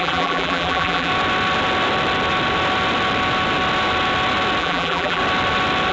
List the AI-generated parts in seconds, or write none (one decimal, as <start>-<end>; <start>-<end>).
0.0-1.1; 4.6-5.2